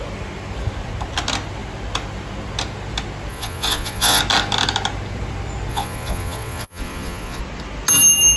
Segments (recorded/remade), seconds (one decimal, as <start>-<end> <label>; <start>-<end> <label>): 0.0-3.3 recorded; 3.3-4.2 remade; 4.2-5.7 recorded; 5.7-7.4 remade; 7.4-8.4 recorded